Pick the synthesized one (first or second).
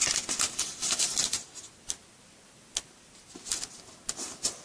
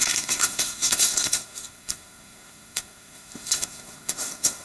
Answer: second